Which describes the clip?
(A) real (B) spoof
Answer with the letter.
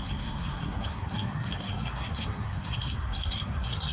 B